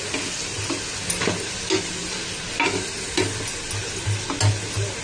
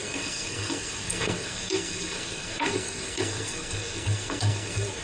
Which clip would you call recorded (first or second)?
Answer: first